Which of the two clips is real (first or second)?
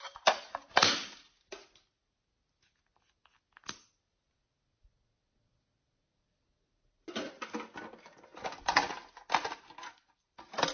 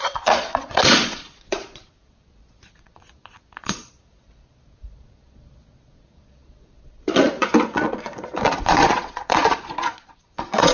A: first